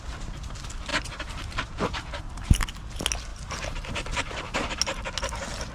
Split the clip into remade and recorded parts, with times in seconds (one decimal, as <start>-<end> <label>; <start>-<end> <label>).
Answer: 0.0-0.9 recorded; 0.9-2.6 remade; 2.6-3.3 recorded; 3.3-4.7 remade; 4.7-5.7 recorded